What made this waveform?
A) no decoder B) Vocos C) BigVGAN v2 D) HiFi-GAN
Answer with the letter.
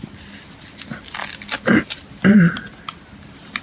A